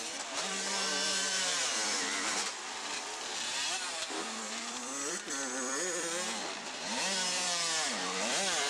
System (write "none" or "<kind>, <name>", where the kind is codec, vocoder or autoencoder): vocoder, BigVGAN v2